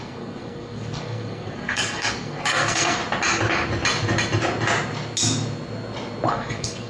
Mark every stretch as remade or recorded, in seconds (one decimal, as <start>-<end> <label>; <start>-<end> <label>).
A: 0.0-3.0 remade; 3.0-6.3 recorded; 6.3-6.9 remade